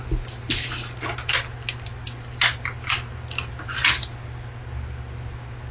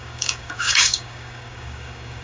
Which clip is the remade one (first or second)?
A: second